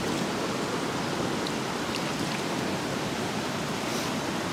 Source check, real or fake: real